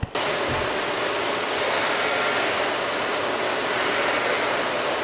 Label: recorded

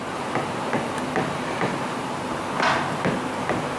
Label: recorded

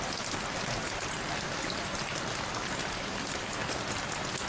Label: recorded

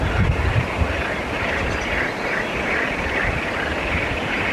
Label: recorded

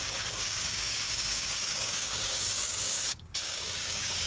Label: remade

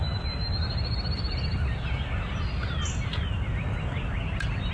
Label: recorded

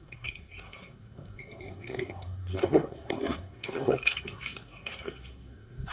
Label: remade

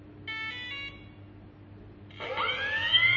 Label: recorded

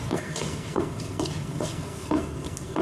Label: remade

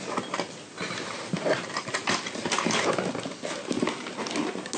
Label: recorded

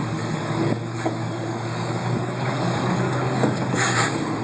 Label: remade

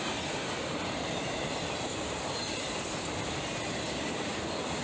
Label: recorded